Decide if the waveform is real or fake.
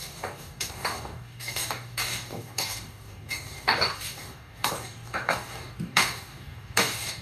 fake